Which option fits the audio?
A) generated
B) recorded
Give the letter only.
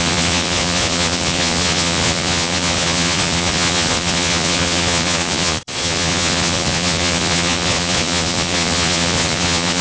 A